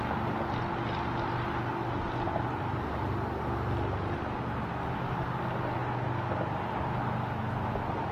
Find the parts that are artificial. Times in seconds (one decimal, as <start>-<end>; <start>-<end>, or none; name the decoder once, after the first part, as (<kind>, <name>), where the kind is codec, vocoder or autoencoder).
none